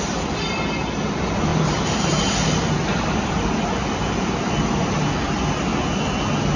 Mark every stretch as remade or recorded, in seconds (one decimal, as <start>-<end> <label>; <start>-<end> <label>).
0.0-1.5 recorded; 1.5-5.4 remade; 5.4-6.6 recorded